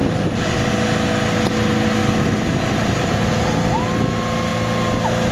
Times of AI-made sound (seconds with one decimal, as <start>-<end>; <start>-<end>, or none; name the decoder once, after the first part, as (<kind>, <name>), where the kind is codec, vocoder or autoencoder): 0.0-0.7 (vocoder, BigVGAN v2); 2.0-3.3